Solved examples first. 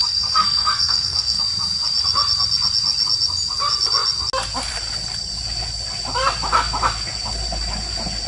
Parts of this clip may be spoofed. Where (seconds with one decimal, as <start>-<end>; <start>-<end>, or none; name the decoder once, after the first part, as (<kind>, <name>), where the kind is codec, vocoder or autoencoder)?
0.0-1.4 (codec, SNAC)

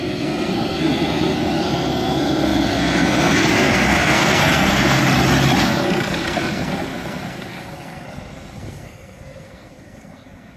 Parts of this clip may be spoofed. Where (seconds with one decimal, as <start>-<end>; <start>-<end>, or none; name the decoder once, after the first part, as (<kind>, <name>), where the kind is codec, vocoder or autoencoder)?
0.0-5.0 (codec, SNAC); 5.6-10.6

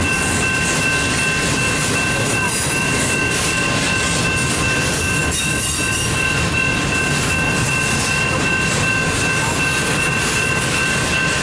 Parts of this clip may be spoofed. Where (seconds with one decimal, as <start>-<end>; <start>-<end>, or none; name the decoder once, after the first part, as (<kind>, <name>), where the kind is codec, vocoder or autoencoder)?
none

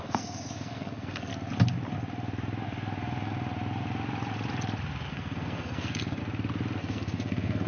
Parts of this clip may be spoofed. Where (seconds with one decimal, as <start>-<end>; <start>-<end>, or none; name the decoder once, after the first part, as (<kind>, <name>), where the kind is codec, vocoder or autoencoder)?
0.0-1.3 (codec, SNAC); 5.1-6.2; 6.8-7.7

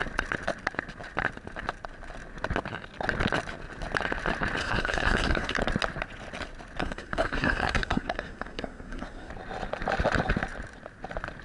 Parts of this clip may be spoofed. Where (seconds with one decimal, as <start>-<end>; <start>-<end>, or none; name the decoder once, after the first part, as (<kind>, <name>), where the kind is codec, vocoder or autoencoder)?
4.6-5.6 (codec, SNAC); 6.8-9.3

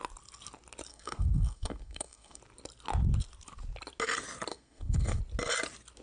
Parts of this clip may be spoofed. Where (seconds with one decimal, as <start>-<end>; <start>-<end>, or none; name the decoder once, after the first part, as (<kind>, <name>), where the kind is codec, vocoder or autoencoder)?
0.9-2.4 (codec, SNAC); 4.5-5.2

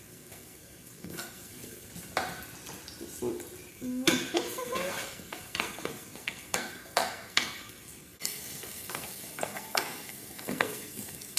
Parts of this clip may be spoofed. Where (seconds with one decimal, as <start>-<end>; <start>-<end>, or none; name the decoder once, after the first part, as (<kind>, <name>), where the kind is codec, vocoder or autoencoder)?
0.0-1.9 (codec, SNAC); 3.7-11.4